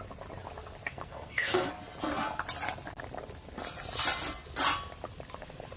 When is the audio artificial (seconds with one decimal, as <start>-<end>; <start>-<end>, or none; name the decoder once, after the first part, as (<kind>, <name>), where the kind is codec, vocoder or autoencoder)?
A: 0.9-1.7 (codec, SNAC)